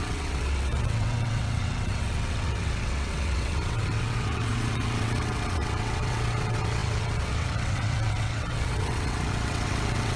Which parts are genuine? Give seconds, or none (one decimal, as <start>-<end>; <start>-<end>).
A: none